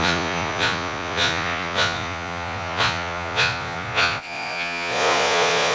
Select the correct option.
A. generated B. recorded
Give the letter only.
A